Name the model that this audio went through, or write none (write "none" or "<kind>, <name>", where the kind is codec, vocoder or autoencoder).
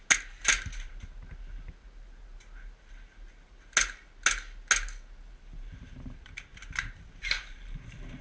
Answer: none